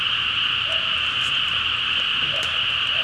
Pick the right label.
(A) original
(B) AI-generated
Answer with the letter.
A